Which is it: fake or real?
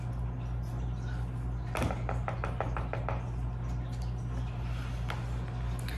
real